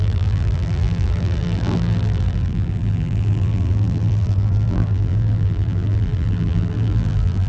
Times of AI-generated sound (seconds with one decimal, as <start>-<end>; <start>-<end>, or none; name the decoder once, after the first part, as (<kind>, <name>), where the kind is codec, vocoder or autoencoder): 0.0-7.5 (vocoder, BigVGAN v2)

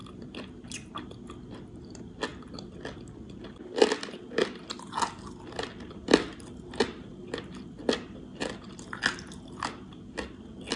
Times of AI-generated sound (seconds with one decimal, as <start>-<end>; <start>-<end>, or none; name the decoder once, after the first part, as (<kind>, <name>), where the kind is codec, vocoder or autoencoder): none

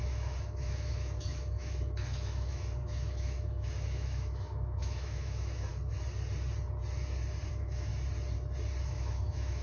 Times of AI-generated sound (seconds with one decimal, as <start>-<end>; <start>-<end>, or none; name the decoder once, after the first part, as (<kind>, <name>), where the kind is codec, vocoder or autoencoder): 0.0-5.7 (autoencoder, DAC-VAE); 7.5-7.9; 8.8-9.6

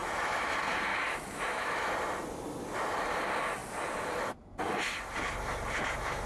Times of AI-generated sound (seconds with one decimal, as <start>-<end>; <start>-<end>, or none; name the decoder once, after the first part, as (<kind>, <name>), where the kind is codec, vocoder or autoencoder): 0.0-0.5 (autoencoder, DAC-VAE); 0.9-1.9

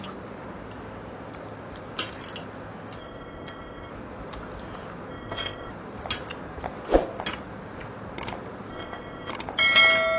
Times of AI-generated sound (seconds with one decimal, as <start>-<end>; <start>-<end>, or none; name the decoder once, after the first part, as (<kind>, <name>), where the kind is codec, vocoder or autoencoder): 3.0-3.9 (codec, ZipCodec); 5.1-5.7; 8.7-9.3